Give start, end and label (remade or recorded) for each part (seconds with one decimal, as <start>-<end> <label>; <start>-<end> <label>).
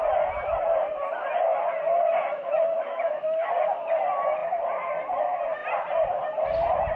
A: 0.0-2.5 recorded; 2.5-3.5 remade; 3.5-7.0 recorded